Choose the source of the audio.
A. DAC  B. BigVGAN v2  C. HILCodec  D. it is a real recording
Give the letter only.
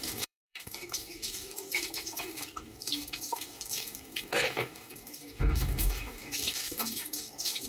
A